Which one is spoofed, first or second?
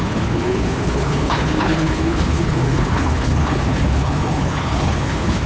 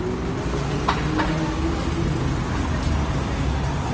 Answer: first